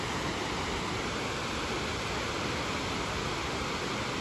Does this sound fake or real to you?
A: real